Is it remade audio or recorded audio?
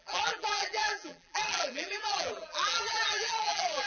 remade